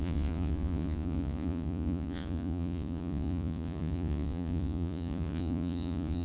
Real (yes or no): no